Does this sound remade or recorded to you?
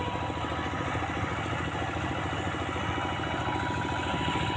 recorded